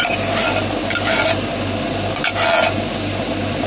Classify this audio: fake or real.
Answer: real